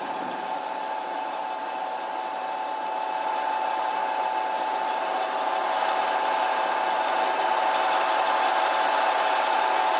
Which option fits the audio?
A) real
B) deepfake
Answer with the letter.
A